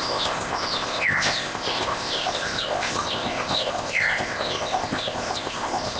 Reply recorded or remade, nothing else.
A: remade